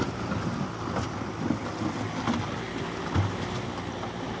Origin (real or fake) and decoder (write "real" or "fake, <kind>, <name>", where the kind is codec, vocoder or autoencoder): real